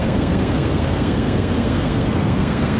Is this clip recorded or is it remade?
remade